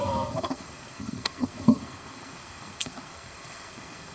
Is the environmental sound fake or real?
fake